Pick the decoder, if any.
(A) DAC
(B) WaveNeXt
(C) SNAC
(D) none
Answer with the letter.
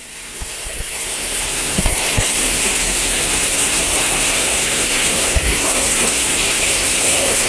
C